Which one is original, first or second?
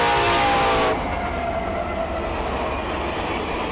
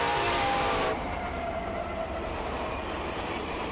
first